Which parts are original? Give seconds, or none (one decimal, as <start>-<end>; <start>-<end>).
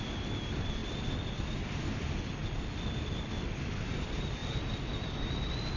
0.0-5.8